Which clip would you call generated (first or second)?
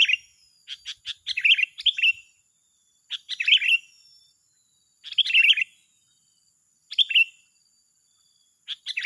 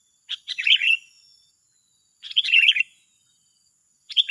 second